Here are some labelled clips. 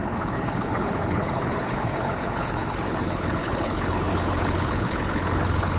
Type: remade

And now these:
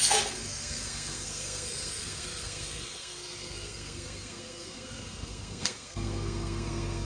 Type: remade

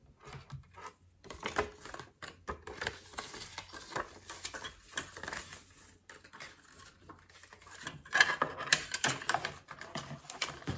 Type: recorded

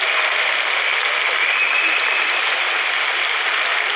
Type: recorded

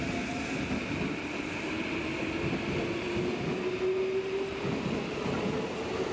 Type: recorded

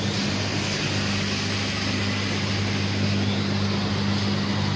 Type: recorded